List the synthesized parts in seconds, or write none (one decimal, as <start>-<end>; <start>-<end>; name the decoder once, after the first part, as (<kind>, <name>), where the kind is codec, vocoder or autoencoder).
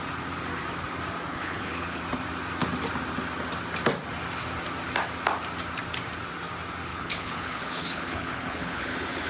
1.3-2.0 (codec, HILCodec); 6.9-9.3